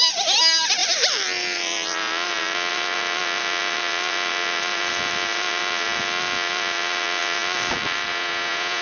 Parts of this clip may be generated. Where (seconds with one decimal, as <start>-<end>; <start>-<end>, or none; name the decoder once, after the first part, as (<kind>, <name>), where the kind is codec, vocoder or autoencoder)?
8.1-8.8 (vocoder, Vocos)